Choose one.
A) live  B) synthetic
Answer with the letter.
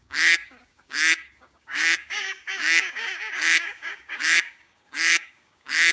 B